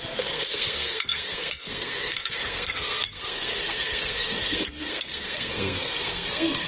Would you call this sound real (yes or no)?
no